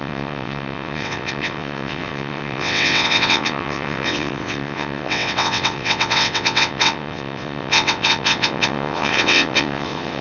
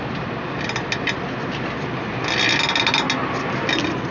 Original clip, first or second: second